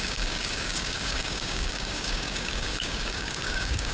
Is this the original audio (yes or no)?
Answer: no